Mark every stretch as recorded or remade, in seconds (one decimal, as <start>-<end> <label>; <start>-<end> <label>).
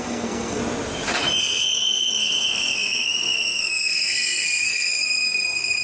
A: 0.0-0.6 remade; 0.6-1.4 recorded; 1.4-5.8 remade